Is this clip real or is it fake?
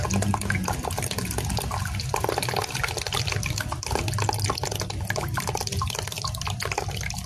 real